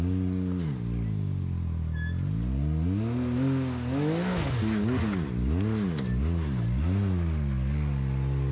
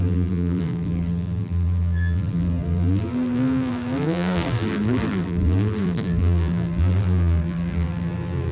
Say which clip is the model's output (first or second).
second